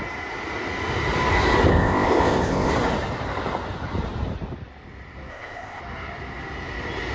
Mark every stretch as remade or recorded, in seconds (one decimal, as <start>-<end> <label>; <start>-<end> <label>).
0.0-1.7 recorded; 1.7-2.7 remade; 2.7-5.3 recorded; 5.3-5.8 remade; 5.8-7.1 recorded